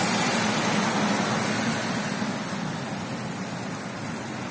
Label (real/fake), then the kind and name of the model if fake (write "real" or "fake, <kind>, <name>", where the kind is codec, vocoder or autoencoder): real